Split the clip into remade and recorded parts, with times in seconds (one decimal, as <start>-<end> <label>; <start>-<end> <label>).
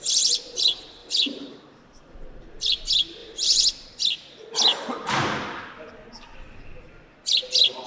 0.0-1.0 recorded; 1.0-2.8 remade; 2.8-3.2 recorded; 3.2-3.7 remade; 3.7-7.9 recorded